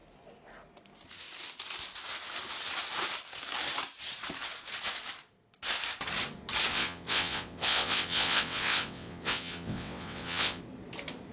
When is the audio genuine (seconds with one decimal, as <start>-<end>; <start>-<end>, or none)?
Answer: 0.0-6.7; 10.6-11.3